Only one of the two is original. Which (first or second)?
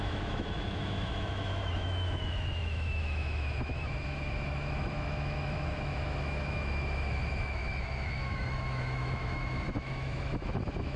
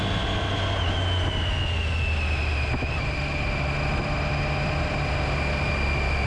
second